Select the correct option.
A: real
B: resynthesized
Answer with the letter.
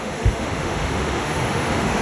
B